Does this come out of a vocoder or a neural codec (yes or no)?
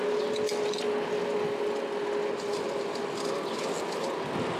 no